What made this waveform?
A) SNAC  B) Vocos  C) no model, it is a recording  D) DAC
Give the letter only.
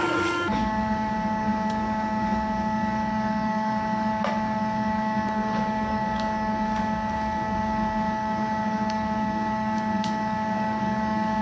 D